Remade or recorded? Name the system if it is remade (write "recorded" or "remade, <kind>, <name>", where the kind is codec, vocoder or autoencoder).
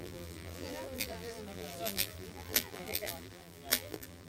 remade, vocoder, BigVGAN v2